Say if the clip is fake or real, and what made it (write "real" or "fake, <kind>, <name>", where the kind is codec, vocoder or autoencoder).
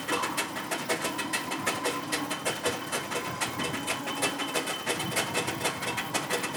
real